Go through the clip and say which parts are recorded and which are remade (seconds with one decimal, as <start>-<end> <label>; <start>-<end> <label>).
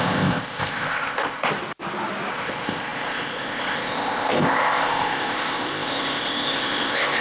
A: 0.0-1.5 remade; 1.5-2.3 recorded; 2.3-7.2 remade